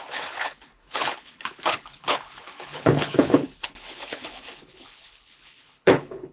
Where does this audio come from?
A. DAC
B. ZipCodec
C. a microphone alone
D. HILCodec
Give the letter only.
D